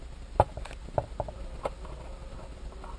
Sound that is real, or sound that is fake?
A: real